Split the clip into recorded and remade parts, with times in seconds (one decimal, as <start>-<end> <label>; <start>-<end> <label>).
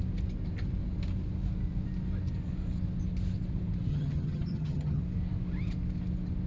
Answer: 0.0-3.9 recorded; 3.9-5.0 remade; 5.0-6.5 recorded